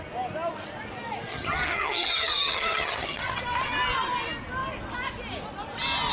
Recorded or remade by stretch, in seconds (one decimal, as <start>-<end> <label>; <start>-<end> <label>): 0.0-1.3 recorded; 1.3-3.4 remade; 3.4-6.1 recorded